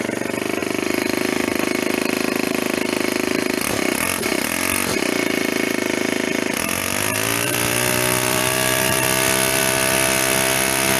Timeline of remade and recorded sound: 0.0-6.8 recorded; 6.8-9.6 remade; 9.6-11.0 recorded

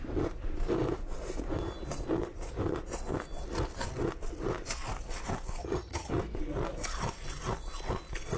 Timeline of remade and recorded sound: 0.0-5.6 recorded; 5.6-6.1 remade; 6.1-8.4 recorded

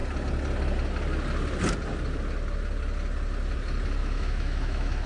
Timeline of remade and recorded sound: 0.0-4.0 recorded; 4.0-5.1 remade